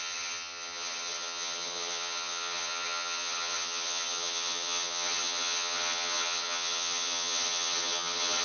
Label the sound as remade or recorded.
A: remade